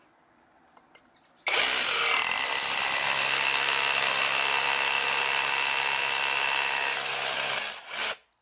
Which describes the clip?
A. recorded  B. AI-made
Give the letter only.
A